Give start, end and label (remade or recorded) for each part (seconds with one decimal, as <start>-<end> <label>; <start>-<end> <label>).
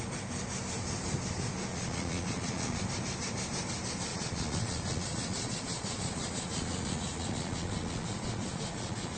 0.0-1.7 recorded; 1.7-2.8 remade; 2.8-4.1 recorded; 4.1-9.2 remade